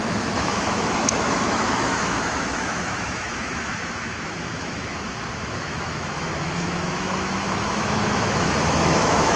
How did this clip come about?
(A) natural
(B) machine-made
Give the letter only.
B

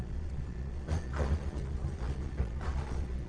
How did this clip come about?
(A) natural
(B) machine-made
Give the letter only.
B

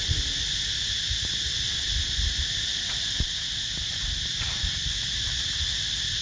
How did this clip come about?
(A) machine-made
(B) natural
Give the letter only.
B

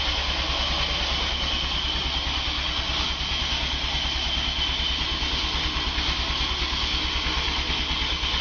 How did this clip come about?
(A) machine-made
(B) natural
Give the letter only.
B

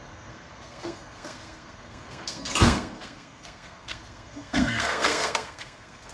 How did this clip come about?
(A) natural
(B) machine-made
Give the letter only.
B